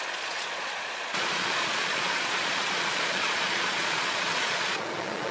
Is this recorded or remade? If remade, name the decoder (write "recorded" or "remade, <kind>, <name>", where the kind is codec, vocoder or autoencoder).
remade, vocoder, Vocos